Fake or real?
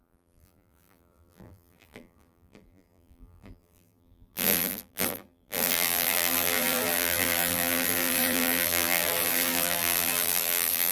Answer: fake